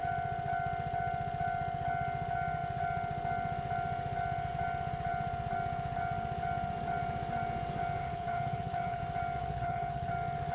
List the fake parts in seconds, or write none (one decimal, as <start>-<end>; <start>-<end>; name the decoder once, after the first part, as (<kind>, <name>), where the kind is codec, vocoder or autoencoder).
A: 8.0-9.0 (codec, HILCodec); 9.4-10.1